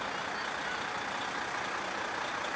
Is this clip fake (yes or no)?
no